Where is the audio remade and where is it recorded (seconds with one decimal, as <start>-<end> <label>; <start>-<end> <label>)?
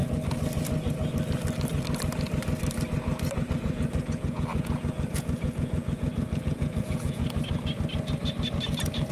0.0-3.5 recorded; 3.5-7.2 remade; 7.2-9.1 recorded